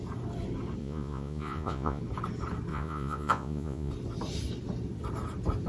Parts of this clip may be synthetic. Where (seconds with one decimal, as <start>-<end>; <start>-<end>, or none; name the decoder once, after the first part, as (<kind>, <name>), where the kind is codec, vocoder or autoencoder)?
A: 0.8-2.0 (vocoder, Vocos); 2.7-3.9